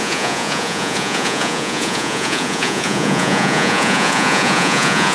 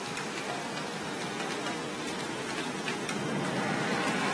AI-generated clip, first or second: first